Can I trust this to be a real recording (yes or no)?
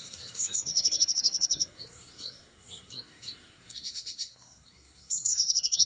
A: no